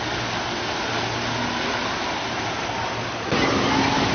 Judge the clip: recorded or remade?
recorded